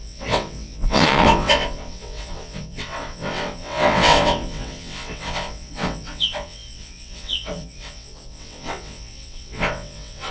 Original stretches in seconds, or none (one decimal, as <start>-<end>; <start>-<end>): none